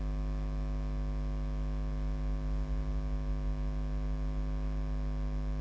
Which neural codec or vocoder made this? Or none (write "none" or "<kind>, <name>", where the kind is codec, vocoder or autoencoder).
none